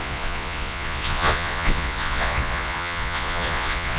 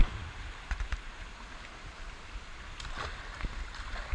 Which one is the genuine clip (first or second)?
second